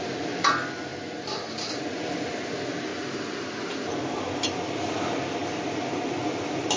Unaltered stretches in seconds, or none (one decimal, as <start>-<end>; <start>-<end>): 0.0-6.8